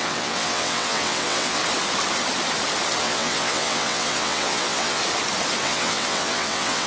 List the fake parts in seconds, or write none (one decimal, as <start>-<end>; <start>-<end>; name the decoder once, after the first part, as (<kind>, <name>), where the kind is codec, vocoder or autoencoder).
0.0-1.6 (vocoder, WaveNeXt); 3.0-5.0; 5.6-6.9